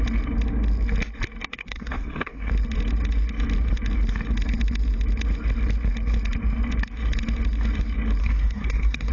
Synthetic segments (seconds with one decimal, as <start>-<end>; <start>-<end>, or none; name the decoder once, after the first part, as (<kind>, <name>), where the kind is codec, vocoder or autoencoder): 1.5-2.5 (codec, SNAC); 8.2-9.1